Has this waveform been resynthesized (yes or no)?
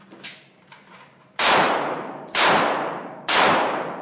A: yes